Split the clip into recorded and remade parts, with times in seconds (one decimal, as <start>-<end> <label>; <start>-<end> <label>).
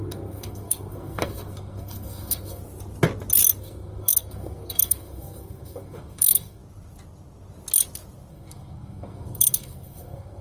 0.0-2.6 remade; 2.6-3.6 recorded; 3.6-6.6 remade; 6.6-8.3 recorded; 8.3-10.4 remade